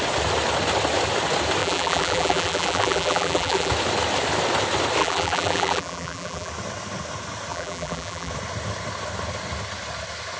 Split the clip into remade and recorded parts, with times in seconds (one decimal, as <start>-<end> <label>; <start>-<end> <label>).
0.0-1.6 recorded; 1.6-3.7 remade; 3.7-5.0 recorded; 5.0-6.5 remade; 6.5-7.5 recorded; 7.5-8.3 remade; 8.3-10.4 recorded